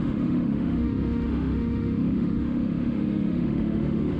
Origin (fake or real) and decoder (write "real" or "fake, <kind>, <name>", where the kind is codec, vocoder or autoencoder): fake, autoencoder, DAC-VAE